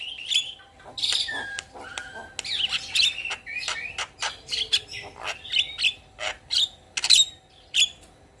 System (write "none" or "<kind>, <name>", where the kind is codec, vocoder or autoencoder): none